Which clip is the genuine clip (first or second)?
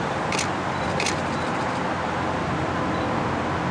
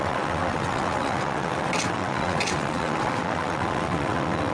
first